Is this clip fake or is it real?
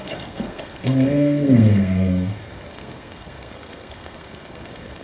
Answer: fake